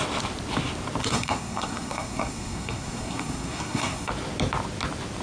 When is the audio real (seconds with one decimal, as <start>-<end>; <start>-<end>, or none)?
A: 0.0-1.0; 4.1-5.2